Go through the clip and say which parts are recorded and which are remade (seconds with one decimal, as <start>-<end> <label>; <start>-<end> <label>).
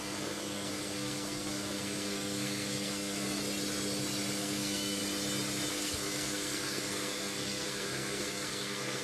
0.0-3.4 remade; 3.4-4.4 recorded; 4.4-5.0 remade; 5.0-5.7 recorded; 5.7-9.0 remade